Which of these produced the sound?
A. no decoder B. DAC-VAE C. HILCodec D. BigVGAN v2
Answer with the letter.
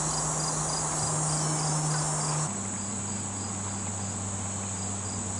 A